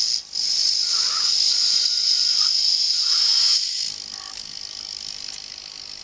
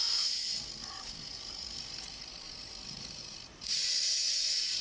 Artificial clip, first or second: second